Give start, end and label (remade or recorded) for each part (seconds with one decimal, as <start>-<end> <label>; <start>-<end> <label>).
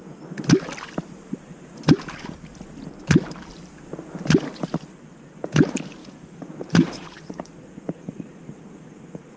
0.0-6.0 recorded; 6.0-9.4 remade